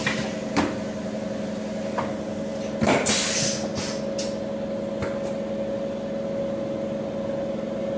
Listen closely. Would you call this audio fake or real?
real